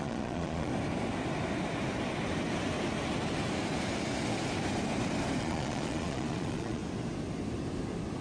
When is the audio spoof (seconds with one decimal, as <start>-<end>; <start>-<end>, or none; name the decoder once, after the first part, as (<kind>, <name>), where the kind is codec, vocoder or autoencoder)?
0.0-0.7 (vocoder, Vocos); 5.4-6.8